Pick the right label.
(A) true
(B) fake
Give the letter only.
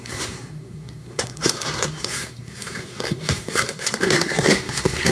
B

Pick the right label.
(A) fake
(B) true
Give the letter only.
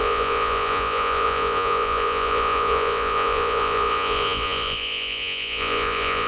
A